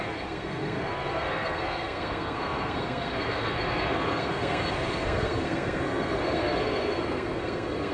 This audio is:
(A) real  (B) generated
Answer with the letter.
B